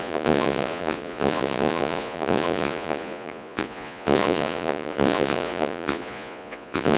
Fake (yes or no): yes